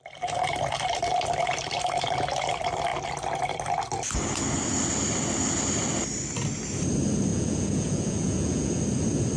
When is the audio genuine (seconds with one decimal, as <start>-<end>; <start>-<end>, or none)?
0.0-7.3; 8.8-9.4